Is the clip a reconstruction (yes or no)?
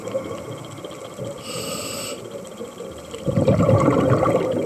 no